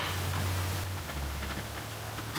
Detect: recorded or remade recorded